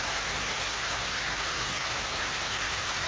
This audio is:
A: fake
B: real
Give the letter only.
A